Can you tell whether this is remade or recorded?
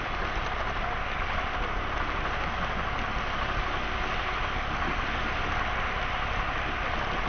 recorded